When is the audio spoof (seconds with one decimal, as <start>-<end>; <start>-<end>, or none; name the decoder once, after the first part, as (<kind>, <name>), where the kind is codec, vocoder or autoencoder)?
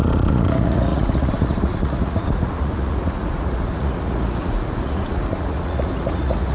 0.0-6.5 (vocoder, Vocos)